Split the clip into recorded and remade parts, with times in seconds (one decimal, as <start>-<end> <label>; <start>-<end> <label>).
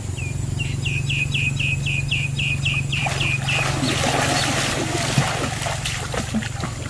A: 0.0-6.9 recorded